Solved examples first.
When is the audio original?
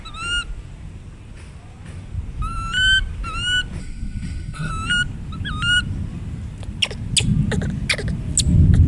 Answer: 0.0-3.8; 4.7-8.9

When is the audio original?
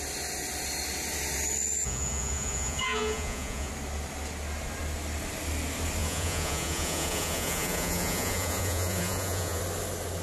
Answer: 0.0-1.8; 3.7-6.0; 9.6-10.2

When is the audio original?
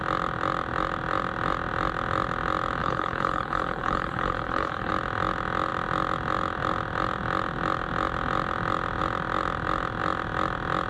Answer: 0.0-2.8; 4.9-10.9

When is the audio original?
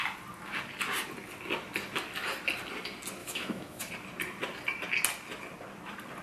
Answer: 0.0-3.2; 3.9-6.2